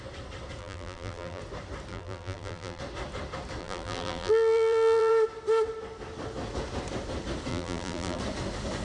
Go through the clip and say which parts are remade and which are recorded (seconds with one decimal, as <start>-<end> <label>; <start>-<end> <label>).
0.0-0.6 recorded; 0.6-1.4 remade; 1.4-1.9 recorded; 1.9-2.8 remade; 2.8-3.6 recorded; 3.6-5.1 remade; 5.1-7.5 recorded; 7.5-8.2 remade; 8.2-8.8 recorded